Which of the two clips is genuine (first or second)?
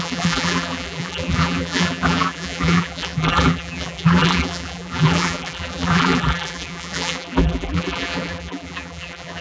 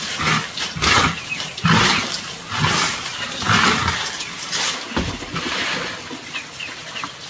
second